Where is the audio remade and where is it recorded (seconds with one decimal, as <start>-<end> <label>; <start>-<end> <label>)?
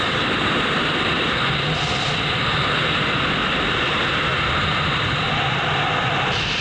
0.0-6.6 recorded